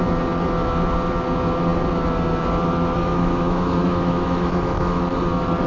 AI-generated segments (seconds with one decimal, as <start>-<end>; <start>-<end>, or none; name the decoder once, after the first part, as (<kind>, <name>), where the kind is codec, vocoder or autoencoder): 3.1-5.0 (autoencoder, DAC-VAE)